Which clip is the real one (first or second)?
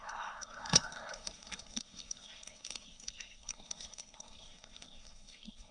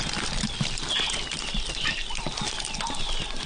second